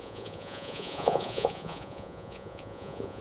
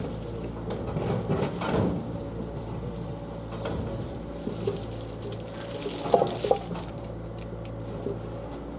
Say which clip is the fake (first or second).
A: first